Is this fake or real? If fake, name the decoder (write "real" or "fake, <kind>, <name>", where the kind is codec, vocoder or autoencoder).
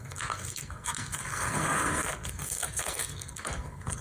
fake, codec, SNAC